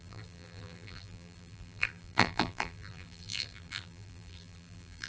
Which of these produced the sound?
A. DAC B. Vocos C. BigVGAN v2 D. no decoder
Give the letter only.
C